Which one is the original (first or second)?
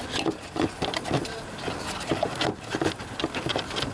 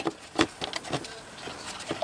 second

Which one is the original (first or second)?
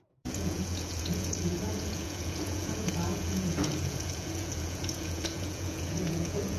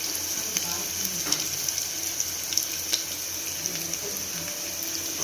second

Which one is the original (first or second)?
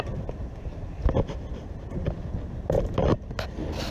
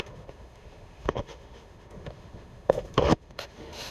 first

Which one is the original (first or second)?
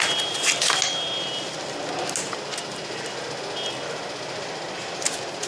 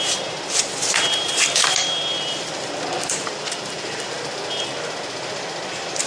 first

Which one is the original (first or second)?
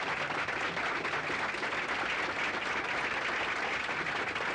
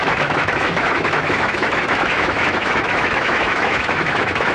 first